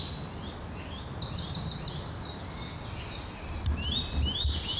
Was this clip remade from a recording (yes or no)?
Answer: no